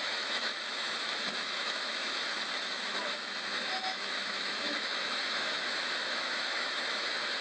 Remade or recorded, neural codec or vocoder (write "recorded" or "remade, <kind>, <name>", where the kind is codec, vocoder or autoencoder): remade, autoencoder, DAC-VAE